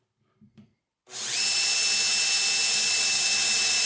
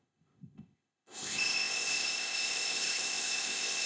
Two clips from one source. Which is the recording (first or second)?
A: first